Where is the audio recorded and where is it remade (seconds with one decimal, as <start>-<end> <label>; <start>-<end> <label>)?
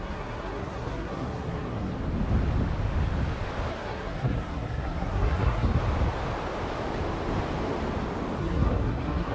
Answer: 0.0-1.9 remade; 1.9-3.7 recorded; 3.7-5.8 remade; 5.8-8.4 recorded; 8.4-9.3 remade